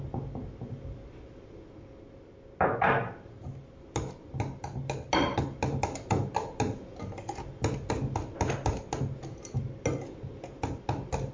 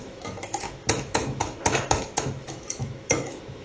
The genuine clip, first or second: first